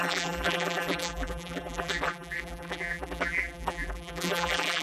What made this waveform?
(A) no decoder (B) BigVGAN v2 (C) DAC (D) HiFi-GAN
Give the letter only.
B